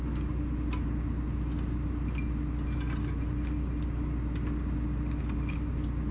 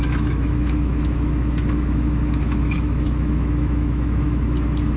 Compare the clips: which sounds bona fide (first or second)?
first